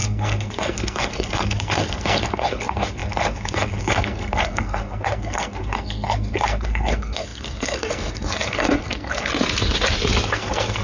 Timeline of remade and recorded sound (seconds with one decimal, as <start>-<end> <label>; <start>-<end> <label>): 0.0-9.3 remade; 9.3-10.3 recorded; 10.3-10.8 remade